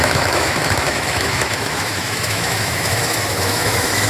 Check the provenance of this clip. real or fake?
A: fake